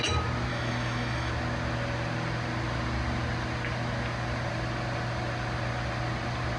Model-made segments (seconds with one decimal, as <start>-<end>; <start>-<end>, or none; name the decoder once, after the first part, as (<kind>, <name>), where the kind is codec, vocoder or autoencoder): 0.5-1.3 (autoencoder, DAC-VAE)

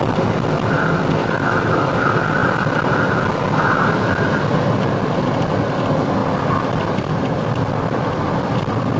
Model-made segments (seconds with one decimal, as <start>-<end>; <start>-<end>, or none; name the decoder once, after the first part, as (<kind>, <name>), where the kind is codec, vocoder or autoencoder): 1.2-1.9 (autoencoder, DAC-VAE)